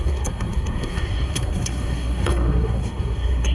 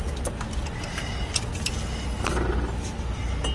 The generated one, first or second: first